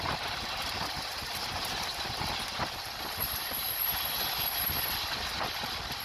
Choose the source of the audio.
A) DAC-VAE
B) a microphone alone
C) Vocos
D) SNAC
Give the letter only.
B